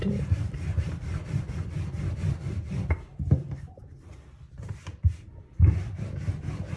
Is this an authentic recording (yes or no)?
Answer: no